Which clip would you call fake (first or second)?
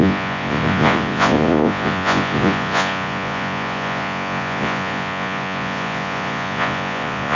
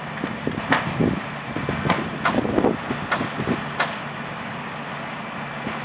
first